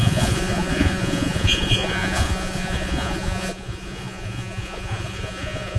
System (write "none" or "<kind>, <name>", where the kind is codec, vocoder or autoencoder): vocoder, Vocos